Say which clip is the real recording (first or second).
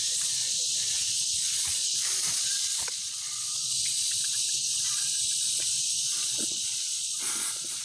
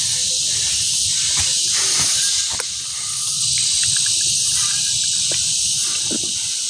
second